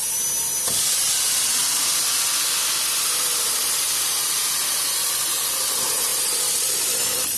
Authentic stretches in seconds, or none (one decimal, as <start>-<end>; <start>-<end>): 0.0-6.1; 6.7-7.4